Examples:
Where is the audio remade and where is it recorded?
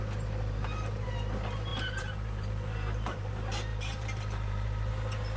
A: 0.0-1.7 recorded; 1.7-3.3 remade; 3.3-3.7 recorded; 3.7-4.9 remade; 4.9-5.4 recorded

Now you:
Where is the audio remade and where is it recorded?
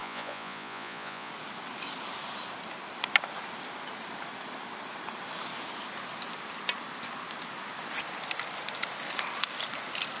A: 0.0-1.3 remade; 1.3-10.2 recorded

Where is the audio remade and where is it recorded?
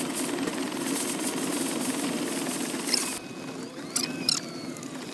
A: 0.0-0.5 recorded; 0.5-3.6 remade; 3.6-5.1 recorded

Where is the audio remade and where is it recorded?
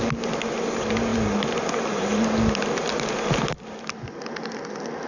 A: 0.0-5.1 recorded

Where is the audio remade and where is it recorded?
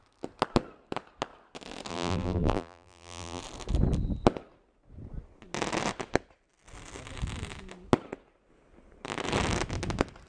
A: 0.0-1.9 recorded; 1.9-3.4 remade; 3.4-10.3 recorded